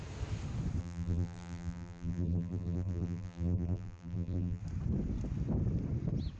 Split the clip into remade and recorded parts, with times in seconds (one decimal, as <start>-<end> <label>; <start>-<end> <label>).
0.0-0.8 recorded; 0.8-4.6 remade; 4.6-6.4 recorded